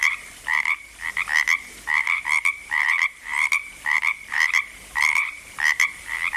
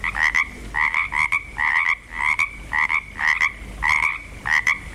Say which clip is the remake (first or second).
first